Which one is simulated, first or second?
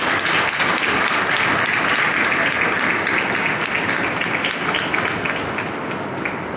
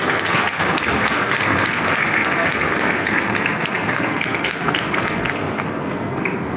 second